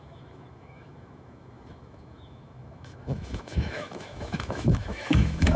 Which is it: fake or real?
fake